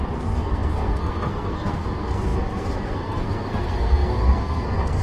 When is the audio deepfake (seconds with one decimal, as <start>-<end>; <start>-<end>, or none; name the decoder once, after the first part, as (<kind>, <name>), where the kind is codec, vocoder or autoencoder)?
0.0-5.0 (codec, SNAC)